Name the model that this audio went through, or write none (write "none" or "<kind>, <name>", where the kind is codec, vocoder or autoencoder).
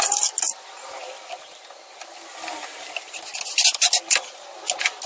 none